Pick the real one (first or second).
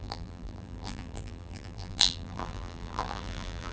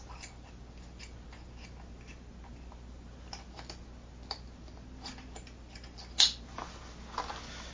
second